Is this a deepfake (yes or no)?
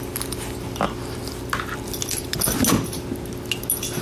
no